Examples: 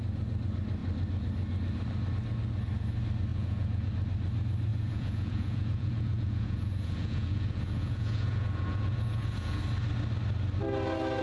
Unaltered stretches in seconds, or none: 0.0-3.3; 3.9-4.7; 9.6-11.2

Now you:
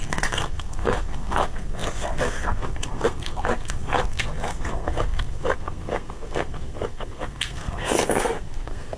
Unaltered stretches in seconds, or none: none

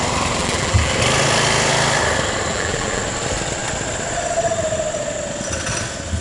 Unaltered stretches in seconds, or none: 0.0-0.4; 0.9-2.5; 3.0-6.2

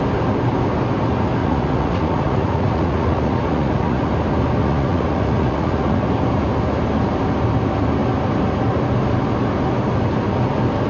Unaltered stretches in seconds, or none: 0.0-1.4; 4.1-4.6; 6.0-10.9

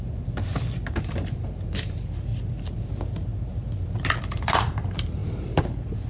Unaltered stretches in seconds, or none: 0.5-1.0; 2.3-4.2